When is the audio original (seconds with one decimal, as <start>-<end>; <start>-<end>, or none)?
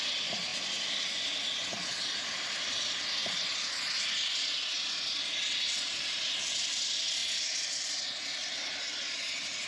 0.0-9.7